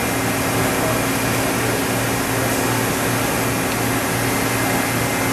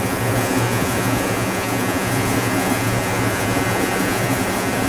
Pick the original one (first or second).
first